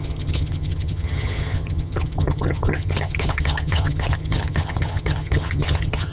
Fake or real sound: fake